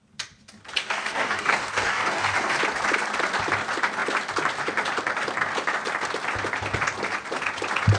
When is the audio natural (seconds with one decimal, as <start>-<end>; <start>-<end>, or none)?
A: 0.0-0.8; 2.6-8.0